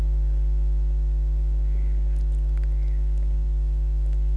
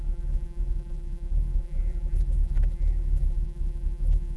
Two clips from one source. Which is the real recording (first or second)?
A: first